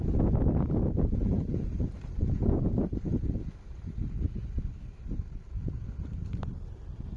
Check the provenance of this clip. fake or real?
real